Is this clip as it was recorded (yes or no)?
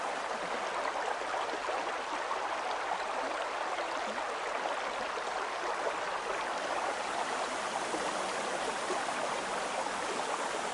yes